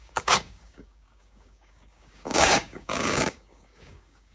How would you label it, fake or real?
fake